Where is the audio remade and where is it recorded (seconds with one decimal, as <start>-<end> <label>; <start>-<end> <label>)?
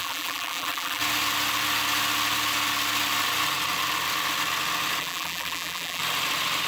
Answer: 0.0-1.0 remade; 1.0-5.0 recorded; 5.0-6.0 remade; 6.0-6.7 recorded